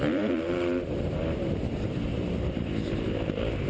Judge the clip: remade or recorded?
remade